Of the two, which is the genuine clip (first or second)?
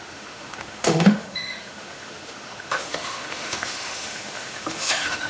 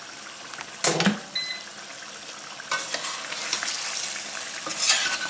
second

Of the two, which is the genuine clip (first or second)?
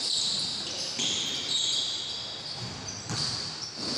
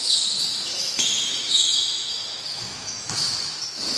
first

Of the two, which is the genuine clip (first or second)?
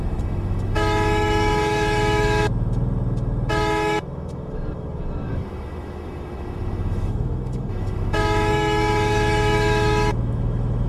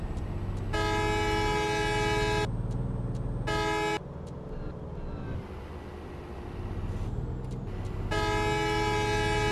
second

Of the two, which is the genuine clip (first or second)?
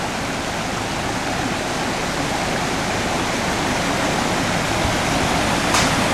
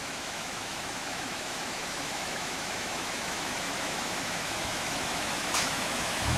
first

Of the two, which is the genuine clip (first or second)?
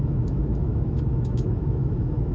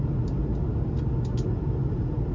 second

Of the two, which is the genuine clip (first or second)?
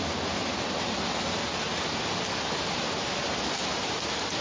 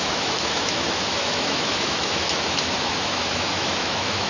first